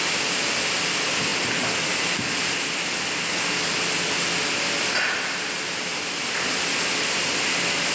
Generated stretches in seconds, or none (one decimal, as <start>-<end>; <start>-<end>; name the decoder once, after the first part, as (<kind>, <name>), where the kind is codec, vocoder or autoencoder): none